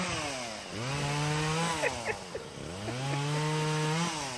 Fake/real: real